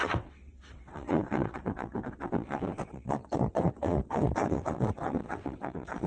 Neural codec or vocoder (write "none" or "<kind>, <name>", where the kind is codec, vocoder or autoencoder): vocoder, WaveNeXt